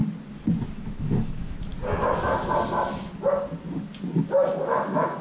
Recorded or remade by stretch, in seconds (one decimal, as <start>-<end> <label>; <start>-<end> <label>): 0.0-0.8 recorded; 0.8-1.7 remade; 1.7-4.6 recorded; 4.6-5.2 remade